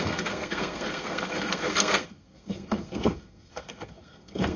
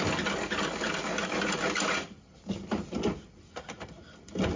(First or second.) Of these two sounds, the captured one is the second